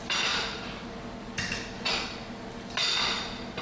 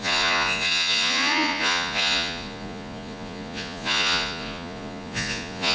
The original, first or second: first